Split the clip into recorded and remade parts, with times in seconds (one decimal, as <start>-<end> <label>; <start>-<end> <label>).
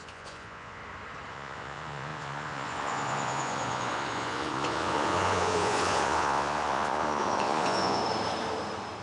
0.0-0.8 remade; 0.8-1.3 recorded; 1.3-8.0 remade; 8.0-9.0 recorded